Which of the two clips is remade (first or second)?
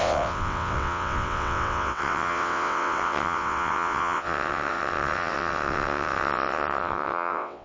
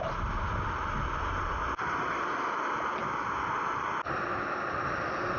first